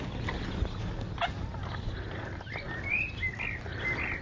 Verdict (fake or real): real